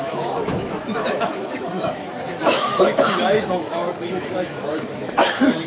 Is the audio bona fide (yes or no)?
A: no